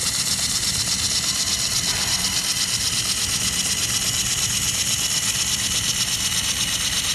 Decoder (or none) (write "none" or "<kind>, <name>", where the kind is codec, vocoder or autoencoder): none